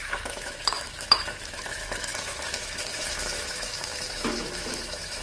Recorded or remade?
remade